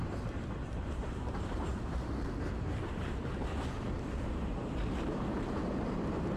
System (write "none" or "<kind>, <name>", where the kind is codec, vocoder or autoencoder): vocoder, BigVGAN v2